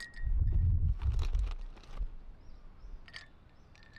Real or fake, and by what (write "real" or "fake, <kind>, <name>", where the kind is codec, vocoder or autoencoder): real